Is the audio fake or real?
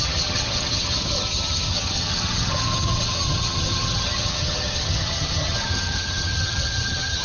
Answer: fake